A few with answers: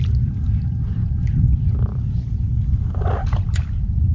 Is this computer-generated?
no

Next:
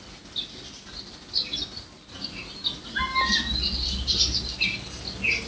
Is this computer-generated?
no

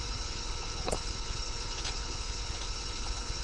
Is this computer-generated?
yes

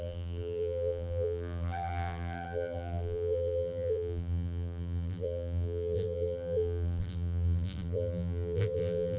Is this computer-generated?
yes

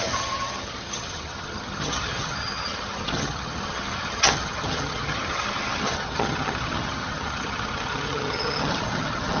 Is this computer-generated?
yes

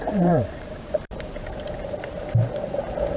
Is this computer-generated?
yes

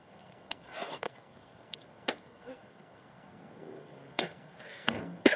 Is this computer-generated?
yes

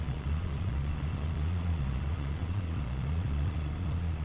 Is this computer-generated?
yes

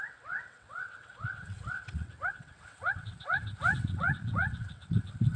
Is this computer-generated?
yes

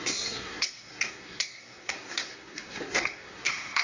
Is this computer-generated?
yes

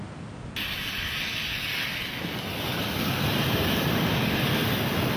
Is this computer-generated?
no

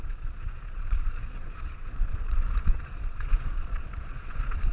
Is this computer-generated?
yes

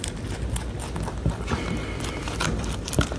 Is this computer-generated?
yes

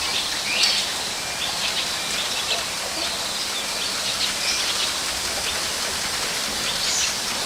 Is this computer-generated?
no